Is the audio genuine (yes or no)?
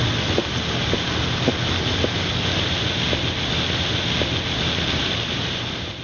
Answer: yes